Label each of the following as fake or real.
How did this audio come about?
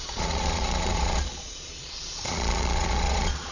fake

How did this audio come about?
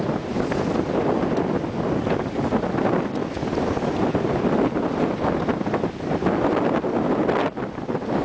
real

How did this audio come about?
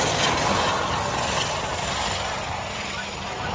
real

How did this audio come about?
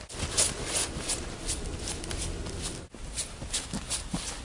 real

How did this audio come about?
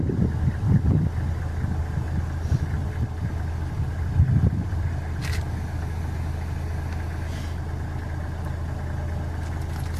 real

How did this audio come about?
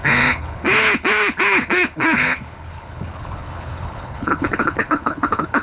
fake